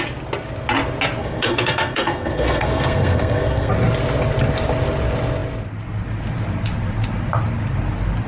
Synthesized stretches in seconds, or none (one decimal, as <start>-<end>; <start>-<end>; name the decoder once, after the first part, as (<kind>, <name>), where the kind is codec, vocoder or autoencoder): 1.2-3.7 (codec, SNAC)